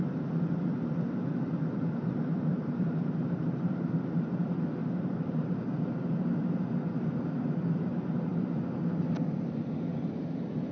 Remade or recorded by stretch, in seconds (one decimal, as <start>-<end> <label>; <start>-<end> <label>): 0.0-2.5 recorded; 2.5-3.9 remade; 3.9-4.8 recorded; 4.8-5.6 remade; 5.6-10.7 recorded

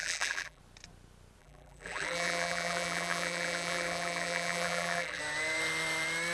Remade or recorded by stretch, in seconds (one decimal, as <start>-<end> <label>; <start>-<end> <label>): 0.0-0.6 remade; 0.6-1.4 recorded; 1.4-5.2 remade; 5.2-6.3 recorded

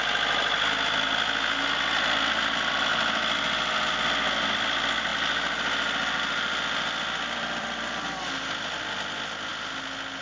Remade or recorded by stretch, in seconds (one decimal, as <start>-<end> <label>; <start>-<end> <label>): 0.0-2.9 recorded; 2.9-3.9 remade; 3.9-5.1 recorded; 5.1-8.8 remade; 8.8-10.2 recorded

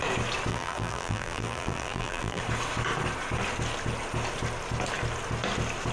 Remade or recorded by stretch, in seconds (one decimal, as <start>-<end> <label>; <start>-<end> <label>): 0.0-0.5 recorded; 0.5-2.4 remade; 2.4-5.9 recorded

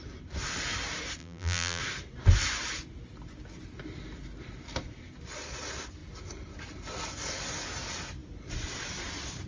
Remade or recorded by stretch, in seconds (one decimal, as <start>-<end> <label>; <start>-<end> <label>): 0.0-1.2 recorded; 1.2-1.8 remade; 1.8-9.5 recorded

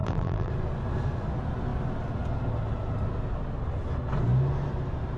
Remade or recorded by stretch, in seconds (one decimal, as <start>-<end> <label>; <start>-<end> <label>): 0.0-0.5 remade; 0.5-5.2 recorded

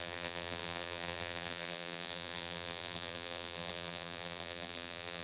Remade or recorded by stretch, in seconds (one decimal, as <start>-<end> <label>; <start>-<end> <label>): 0.0-5.2 remade